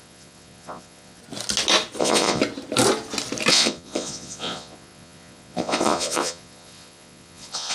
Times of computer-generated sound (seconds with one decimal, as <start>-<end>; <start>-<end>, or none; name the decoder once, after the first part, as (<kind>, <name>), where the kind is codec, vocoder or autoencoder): 0.0-1.2 (vocoder, Vocos); 2.0-2.4; 3.5-7.7